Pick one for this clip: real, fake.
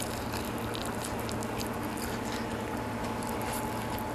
real